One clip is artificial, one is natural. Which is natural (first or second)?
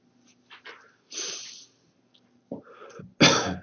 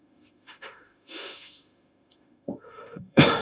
first